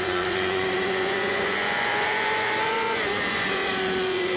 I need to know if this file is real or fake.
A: fake